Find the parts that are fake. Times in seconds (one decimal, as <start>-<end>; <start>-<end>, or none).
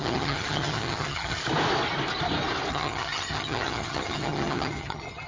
0.0-1.4; 2.7-5.3